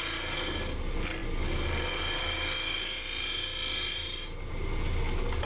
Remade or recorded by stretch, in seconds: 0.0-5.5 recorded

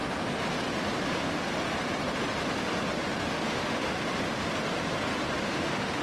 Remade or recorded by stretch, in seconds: 0.0-3.3 recorded; 3.3-3.8 remade; 3.8-5.5 recorded; 5.5-6.0 remade

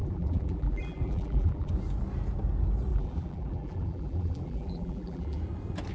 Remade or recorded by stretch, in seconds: 0.0-1.7 remade; 1.7-2.9 recorded; 2.9-5.4 remade; 5.4-5.9 recorded

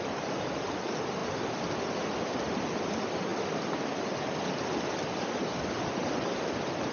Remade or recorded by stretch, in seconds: 0.0-6.9 recorded

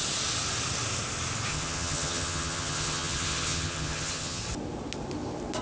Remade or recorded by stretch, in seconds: 0.0-1.5 recorded; 1.5-4.4 remade; 4.4-5.6 recorded

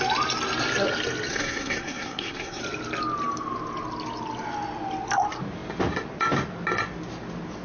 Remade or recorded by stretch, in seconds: 0.0-1.3 recorded; 1.3-2.6 remade; 2.6-7.6 recorded